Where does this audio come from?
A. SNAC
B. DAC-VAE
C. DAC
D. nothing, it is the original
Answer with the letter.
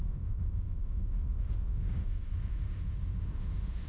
B